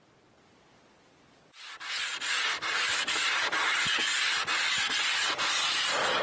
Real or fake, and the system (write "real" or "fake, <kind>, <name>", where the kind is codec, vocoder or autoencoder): real